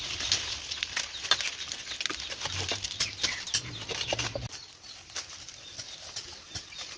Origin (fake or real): real